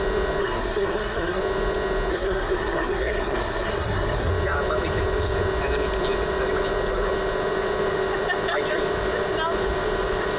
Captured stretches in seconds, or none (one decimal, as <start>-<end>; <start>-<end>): 0.0-0.4; 1.4-2.1; 4.3-10.4